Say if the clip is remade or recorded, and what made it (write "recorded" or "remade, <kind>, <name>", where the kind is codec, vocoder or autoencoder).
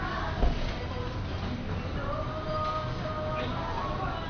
recorded